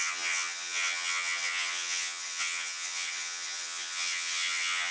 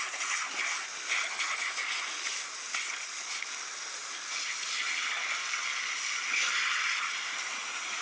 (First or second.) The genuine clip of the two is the second